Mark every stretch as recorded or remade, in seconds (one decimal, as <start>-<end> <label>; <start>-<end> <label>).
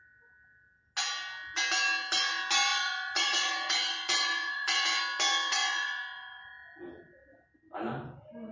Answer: 0.0-2.7 recorded; 2.7-5.0 remade; 5.0-5.6 recorded; 5.6-6.5 remade; 6.5-8.5 recorded